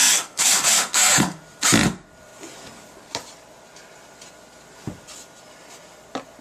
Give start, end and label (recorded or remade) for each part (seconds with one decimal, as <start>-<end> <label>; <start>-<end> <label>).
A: 0.0-1.4 remade; 1.4-6.4 recorded